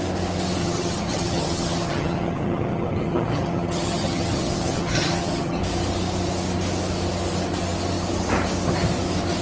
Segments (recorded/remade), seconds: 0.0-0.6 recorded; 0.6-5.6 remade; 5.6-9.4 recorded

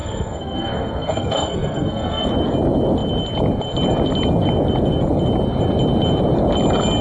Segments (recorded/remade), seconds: 0.0-2.3 remade; 2.3-7.0 recorded